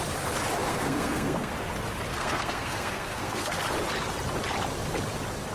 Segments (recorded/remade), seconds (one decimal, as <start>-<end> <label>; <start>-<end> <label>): 0.0-0.7 recorded; 0.7-1.5 remade; 1.5-2.1 recorded; 2.1-3.6 remade; 3.6-5.5 recorded